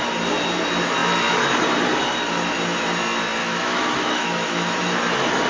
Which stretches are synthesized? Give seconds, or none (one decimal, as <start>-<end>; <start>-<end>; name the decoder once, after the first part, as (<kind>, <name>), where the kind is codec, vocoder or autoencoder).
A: 3.4-5.0 (autoencoder, DAC-VAE)

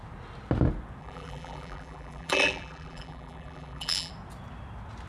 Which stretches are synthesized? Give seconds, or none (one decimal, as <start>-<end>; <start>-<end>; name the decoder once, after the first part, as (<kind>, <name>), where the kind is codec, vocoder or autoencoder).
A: 1.0-4.1 (vocoder, BigVGAN v2)

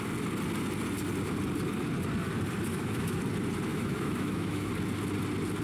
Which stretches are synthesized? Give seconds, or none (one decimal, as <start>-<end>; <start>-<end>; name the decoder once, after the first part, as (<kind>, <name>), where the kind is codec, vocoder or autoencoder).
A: 2.7-3.2 (autoencoder, DAC-VAE); 3.7-4.7

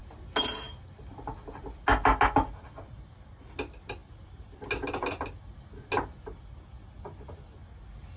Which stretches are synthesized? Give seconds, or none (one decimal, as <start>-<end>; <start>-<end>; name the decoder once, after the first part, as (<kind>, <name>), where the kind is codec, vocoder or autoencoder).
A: none

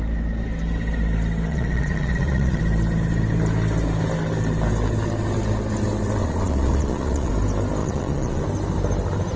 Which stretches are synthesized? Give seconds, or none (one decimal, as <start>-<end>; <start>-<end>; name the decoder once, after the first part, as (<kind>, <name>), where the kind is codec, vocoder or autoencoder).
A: 1.5-2.6 (vocoder, Vocos); 6.2-7.3; 7.8-8.4

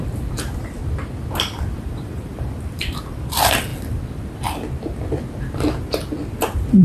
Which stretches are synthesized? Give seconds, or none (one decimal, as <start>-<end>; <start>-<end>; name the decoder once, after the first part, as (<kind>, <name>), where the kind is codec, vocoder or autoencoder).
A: 0.0-0.8 (vocoder, BigVGAN v2); 1.3-3.7; 6.3-6.8

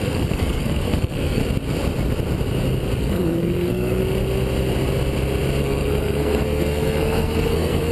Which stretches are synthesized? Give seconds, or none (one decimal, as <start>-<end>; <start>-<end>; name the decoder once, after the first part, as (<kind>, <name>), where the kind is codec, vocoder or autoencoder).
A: 0.0-1.4 (codec, SNAC); 3.0-4.0; 5.6-7.9

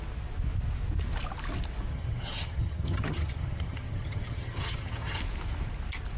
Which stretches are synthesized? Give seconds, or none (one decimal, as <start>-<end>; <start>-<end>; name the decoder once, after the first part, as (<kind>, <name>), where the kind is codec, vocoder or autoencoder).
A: 1.9-5.2 (vocoder, HiFi-GAN)